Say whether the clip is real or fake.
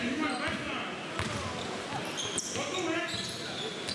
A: real